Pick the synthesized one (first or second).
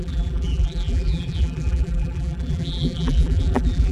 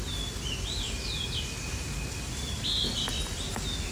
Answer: first